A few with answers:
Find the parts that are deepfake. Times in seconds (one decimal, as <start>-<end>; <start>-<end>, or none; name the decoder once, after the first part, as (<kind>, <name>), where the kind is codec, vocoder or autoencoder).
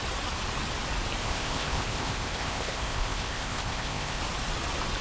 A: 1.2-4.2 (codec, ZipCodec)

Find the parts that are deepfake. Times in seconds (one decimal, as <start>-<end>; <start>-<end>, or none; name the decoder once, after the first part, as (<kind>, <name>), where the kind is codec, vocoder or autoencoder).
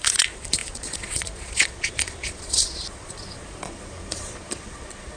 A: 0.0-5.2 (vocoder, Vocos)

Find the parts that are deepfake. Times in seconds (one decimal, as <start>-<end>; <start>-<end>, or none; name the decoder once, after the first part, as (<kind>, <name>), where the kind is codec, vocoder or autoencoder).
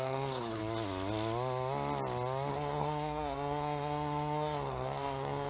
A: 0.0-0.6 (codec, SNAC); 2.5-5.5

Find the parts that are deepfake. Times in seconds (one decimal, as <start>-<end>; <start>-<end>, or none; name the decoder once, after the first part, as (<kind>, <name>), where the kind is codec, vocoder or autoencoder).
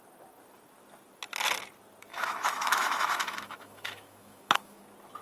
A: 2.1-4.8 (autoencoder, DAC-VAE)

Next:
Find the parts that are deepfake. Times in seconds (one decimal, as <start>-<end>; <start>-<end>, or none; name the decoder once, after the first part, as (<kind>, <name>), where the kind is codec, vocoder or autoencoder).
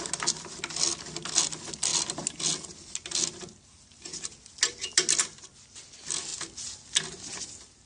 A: none